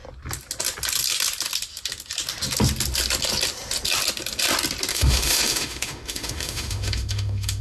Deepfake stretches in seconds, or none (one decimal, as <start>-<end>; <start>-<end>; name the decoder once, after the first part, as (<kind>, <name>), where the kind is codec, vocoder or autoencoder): 4.9-7.6 (autoencoder, DAC-VAE)